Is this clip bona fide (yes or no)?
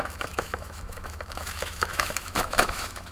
no